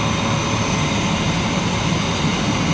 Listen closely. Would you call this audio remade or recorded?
recorded